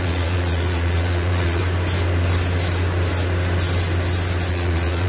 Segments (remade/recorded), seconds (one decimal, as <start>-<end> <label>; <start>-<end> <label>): 0.0-1.6 remade; 1.6-4.5 recorded; 4.5-5.1 remade